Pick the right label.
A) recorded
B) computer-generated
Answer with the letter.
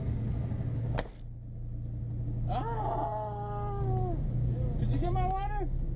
A